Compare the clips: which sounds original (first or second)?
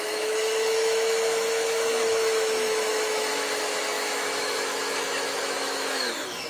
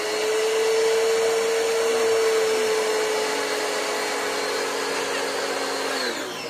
second